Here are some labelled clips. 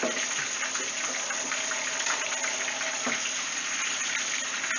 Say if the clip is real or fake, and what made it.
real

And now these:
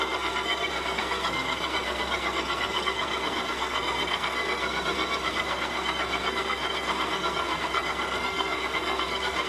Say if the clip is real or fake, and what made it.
fake, codec, SNAC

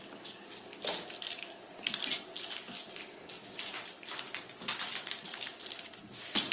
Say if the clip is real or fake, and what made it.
real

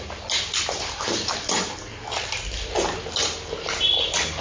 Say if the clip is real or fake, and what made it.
real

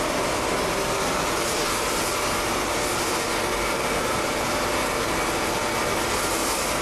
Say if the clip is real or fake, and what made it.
real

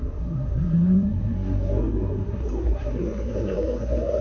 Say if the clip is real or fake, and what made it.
fake, codec, SNAC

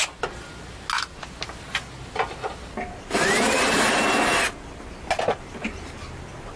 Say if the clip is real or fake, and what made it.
real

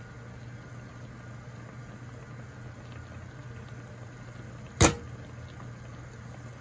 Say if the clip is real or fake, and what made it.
real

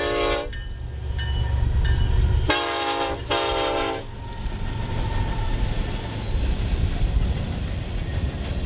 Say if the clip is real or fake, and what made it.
real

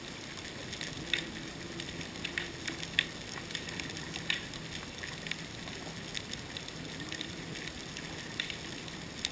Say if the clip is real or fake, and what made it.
real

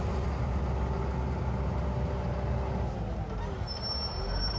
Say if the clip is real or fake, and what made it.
real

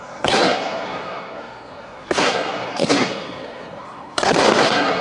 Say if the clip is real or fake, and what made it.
fake, codec, SNAC